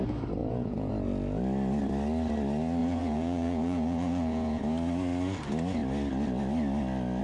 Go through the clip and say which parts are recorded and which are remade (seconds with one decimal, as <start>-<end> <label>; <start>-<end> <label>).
0.0-0.4 recorded; 0.4-0.9 remade; 0.9-2.8 recorded; 2.8-4.6 remade; 4.6-7.2 recorded